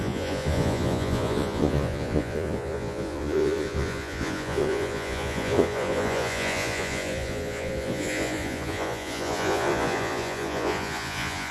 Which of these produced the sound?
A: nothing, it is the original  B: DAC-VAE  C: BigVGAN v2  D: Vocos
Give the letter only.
D